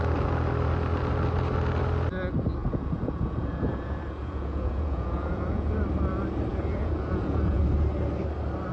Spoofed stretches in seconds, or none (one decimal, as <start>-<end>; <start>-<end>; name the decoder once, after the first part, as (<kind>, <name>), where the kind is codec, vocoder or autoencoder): 2.6-5.8 (vocoder, Vocos); 6.5-7.6